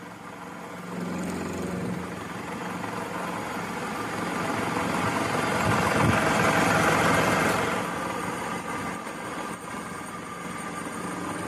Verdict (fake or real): real